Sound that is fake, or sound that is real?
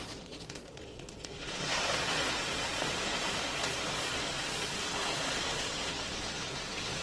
fake